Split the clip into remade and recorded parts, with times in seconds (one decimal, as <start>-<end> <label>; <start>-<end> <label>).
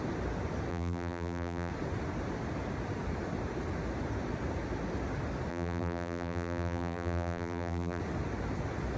0.0-0.7 recorded; 0.7-1.7 remade; 1.7-5.5 recorded; 5.5-8.0 remade; 8.0-9.0 recorded